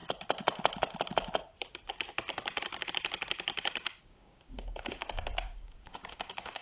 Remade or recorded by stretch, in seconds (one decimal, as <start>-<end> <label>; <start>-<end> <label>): 0.0-4.0 recorded; 4.0-6.6 remade